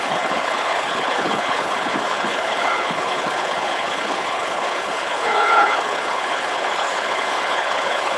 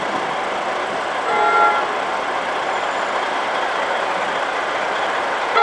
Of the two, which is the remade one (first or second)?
first